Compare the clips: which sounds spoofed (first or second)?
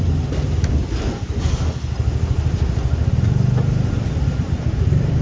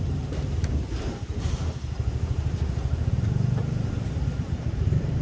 second